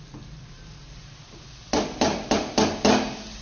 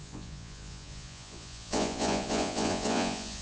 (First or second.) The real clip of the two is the first